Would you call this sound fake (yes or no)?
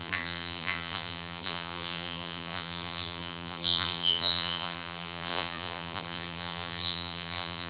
yes